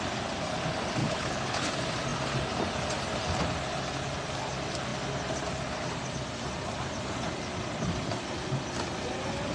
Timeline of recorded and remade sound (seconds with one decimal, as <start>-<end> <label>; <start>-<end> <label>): 0.0-1.0 recorded; 1.0-1.7 remade; 1.7-9.5 recorded